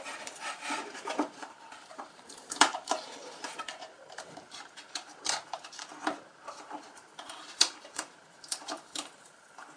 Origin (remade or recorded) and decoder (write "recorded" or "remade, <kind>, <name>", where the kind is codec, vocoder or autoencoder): remade, vocoder, BigVGAN v2